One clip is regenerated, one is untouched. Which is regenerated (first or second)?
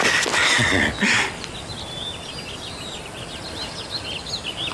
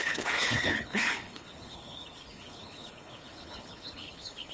second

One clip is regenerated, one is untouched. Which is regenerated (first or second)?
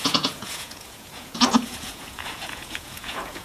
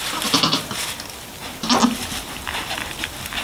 first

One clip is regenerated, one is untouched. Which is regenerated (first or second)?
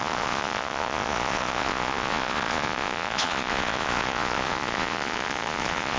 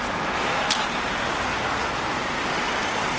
first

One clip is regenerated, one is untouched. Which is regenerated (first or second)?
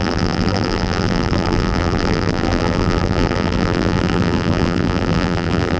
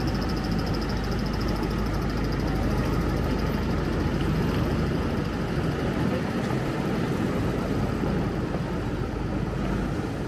first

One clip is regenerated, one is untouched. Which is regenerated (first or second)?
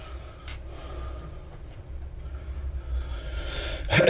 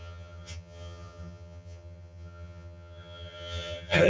second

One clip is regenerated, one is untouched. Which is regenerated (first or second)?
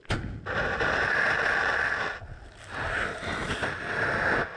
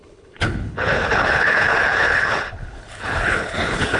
second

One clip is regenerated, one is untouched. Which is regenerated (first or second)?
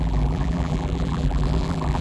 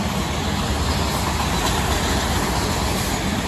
first